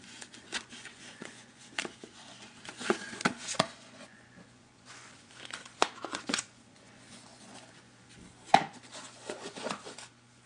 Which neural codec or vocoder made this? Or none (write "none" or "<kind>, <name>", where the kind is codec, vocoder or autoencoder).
vocoder, Vocos